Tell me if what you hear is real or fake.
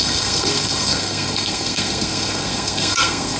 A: fake